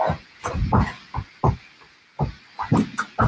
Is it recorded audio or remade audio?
recorded